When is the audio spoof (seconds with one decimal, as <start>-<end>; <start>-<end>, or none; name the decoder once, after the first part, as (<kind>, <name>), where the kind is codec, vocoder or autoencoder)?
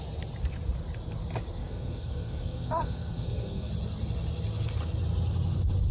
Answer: 1.6-3.7 (codec, SNAC)